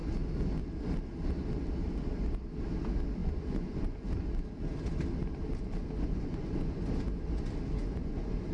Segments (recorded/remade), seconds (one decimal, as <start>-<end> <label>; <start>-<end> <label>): 0.0-3.2 recorded; 3.2-4.1 remade; 4.1-5.8 recorded; 5.8-6.8 remade; 6.8-7.8 recorded; 7.8-8.5 remade